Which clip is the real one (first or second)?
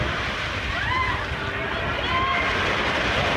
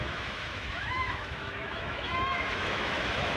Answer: first